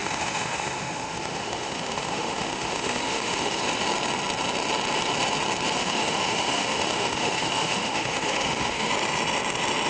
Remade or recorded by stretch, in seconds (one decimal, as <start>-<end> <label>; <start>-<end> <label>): 0.0-3.6 remade; 3.6-5.8 recorded; 5.8-8.9 remade; 8.9-9.9 recorded